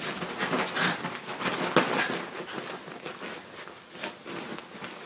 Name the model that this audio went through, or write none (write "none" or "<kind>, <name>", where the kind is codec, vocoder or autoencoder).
none